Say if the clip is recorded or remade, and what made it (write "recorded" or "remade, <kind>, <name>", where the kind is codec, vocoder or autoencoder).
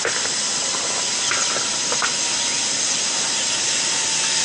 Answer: recorded